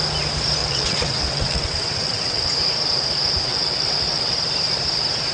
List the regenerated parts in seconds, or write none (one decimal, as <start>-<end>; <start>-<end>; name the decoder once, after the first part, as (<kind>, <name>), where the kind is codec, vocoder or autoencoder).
0.6-2.5 (vocoder, WaveNeXt); 3.5-4.3